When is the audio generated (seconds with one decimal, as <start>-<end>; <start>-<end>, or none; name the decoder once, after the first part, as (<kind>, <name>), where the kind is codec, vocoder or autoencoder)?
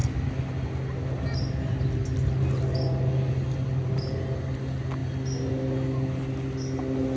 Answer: none